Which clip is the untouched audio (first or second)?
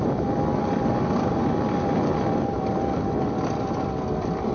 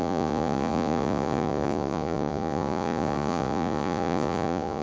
first